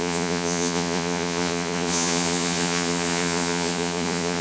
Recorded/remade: remade